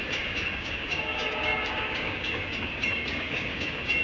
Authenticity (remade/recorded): remade